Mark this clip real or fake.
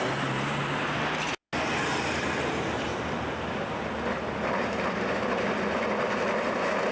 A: real